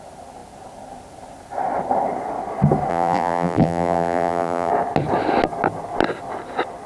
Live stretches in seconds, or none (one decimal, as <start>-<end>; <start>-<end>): 0.0-2.9; 4.7-6.9